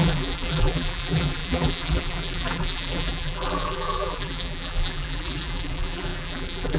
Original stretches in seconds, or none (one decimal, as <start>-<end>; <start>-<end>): none